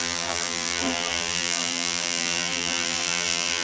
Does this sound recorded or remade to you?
remade